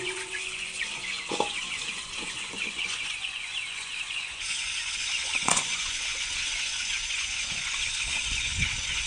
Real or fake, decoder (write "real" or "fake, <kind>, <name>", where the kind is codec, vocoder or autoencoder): fake, vocoder, Vocos